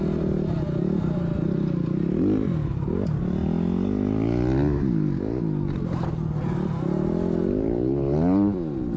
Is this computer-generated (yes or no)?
no